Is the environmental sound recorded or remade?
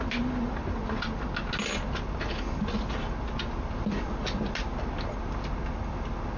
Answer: recorded